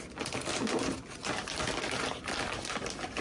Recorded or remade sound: recorded